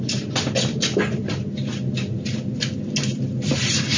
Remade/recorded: recorded